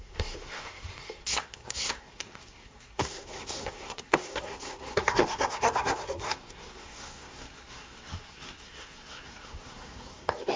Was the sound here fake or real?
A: fake